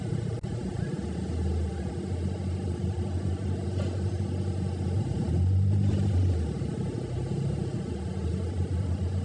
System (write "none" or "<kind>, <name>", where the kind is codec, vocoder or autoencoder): none